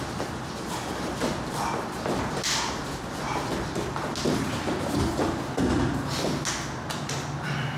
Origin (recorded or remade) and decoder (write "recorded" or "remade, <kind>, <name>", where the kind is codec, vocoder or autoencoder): recorded